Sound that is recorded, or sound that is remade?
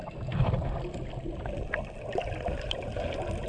recorded